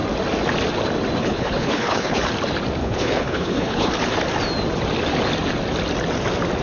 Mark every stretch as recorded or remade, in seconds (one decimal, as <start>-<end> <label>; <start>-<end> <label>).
0.0-1.2 recorded; 1.2-2.2 remade; 2.2-2.8 recorded; 2.8-3.9 remade; 3.9-6.6 recorded